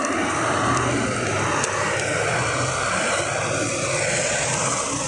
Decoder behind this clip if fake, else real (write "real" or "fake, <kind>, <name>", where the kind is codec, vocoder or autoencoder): real